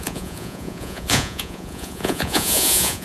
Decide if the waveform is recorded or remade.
remade